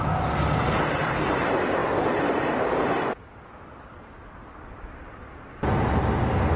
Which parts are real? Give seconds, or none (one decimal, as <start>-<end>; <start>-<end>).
0.0-6.6